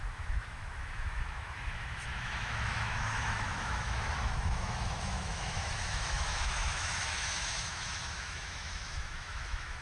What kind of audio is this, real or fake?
fake